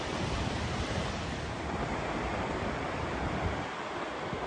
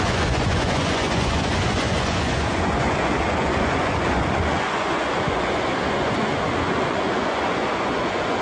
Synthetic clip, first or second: second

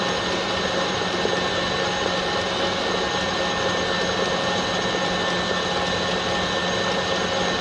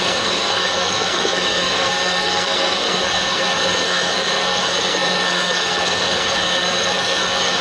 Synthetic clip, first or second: second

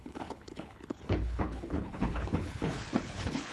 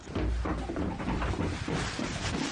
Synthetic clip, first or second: first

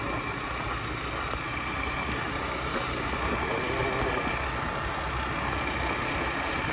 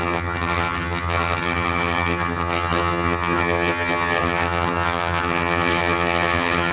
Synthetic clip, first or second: second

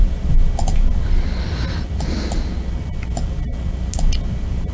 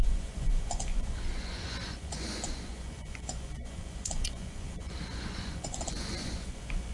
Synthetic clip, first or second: second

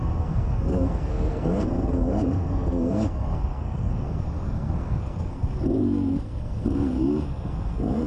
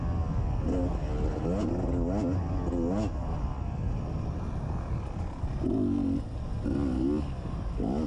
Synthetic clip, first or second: first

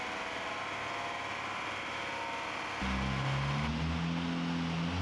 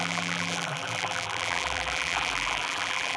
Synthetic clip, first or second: second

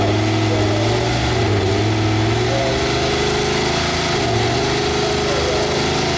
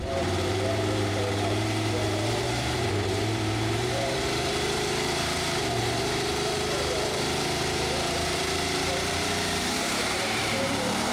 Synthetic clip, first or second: second